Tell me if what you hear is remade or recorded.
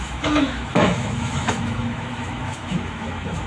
remade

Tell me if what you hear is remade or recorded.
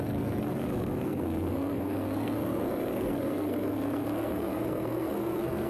remade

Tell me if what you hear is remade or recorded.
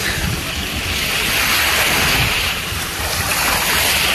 recorded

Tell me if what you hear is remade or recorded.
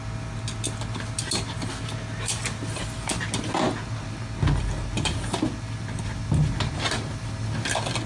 recorded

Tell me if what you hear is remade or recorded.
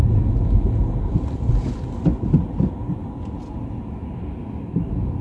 recorded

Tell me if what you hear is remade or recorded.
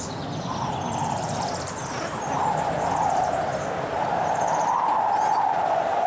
recorded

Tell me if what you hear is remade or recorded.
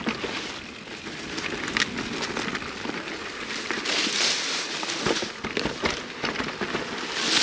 recorded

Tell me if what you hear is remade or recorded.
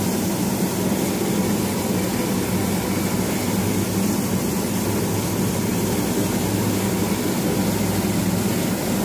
recorded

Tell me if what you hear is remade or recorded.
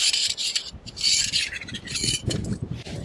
remade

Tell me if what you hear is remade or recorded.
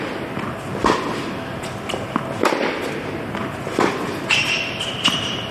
recorded